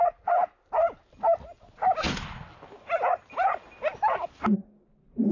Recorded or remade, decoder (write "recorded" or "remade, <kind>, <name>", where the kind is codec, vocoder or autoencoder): recorded